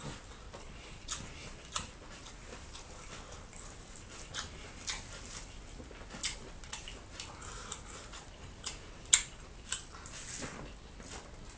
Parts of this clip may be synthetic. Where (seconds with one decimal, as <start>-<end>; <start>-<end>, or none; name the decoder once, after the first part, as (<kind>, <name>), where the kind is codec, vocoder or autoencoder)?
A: 1.4-2.3 (vocoder, BigVGAN v2); 3.5-4.6